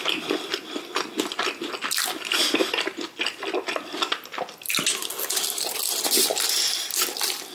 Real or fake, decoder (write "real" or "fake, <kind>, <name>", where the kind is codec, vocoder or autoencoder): real